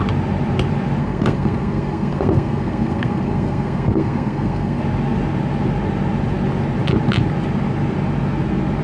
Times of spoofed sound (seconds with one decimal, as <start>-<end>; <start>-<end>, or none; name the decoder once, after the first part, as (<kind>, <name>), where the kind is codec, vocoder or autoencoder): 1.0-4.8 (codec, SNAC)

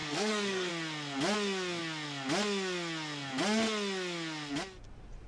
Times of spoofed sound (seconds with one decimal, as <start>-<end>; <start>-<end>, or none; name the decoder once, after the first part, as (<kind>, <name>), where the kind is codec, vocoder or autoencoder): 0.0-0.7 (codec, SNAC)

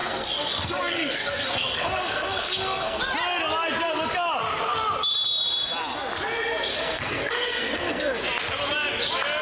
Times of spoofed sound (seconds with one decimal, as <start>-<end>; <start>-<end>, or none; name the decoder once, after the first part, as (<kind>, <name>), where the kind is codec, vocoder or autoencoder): 0.0-3.0 (codec, SNAC); 6.7-8.2